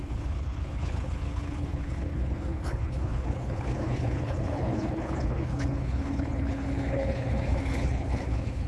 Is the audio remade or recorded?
remade